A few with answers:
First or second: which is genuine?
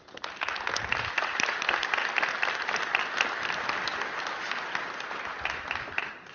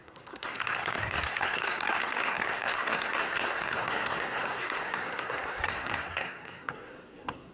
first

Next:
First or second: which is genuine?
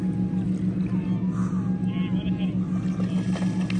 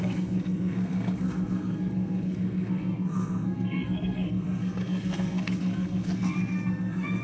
first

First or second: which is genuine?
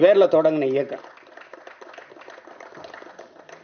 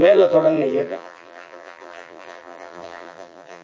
first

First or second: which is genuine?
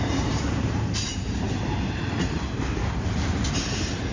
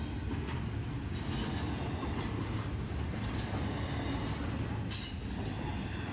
second